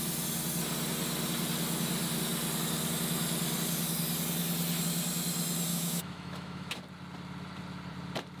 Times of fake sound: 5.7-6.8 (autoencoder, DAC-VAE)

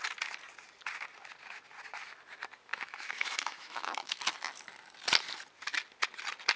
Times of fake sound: 2.7-4.2 (autoencoder, DAC-VAE)

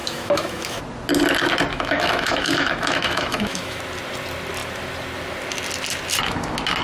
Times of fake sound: 0.0-0.8 (autoencoder, DAC-VAE); 1.7-3.8

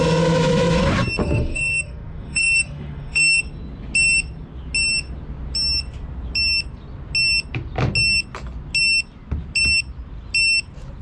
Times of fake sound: 1.2-3.4 (autoencoder, DAC-VAE)

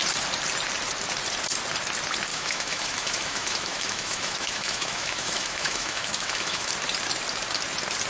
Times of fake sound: 2.3-6.7 (autoencoder, DAC-VAE)

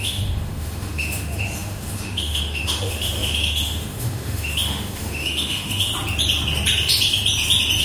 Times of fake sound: 0.0-5.9 (autoencoder, DAC-VAE)

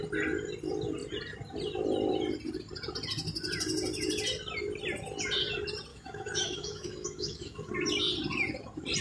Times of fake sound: 5.9-7.7 (autoencoder, DAC-VAE)